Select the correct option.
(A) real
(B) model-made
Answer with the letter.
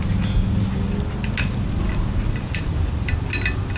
A